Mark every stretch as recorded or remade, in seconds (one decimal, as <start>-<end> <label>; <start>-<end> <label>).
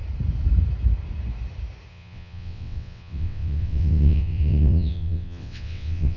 0.0-1.9 recorded; 1.9-6.2 remade